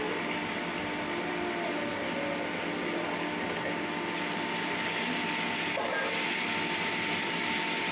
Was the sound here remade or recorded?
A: recorded